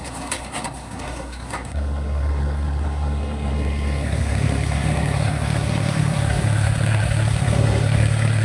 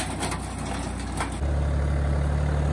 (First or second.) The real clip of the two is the second